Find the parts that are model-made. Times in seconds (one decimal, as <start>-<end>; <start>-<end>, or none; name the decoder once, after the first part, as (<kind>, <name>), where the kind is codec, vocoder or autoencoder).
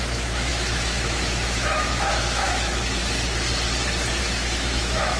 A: 0.0-3.0 (autoencoder, DAC-VAE); 4.2-5.2